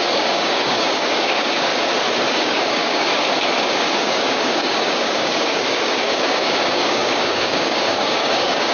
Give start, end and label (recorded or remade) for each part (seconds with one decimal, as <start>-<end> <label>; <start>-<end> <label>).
0.0-1.7 remade; 1.7-2.3 recorded; 2.3-3.1 remade; 3.1-3.6 recorded; 3.6-8.7 remade